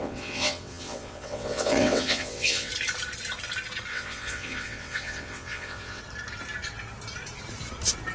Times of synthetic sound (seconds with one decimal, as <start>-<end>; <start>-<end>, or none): 0.0-2.7; 3.9-6.0